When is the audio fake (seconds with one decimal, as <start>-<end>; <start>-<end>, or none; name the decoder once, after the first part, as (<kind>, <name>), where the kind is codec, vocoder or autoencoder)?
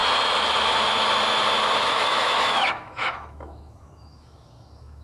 1.9-5.0 (autoencoder, DAC-VAE)